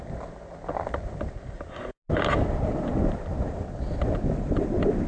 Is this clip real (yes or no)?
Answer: yes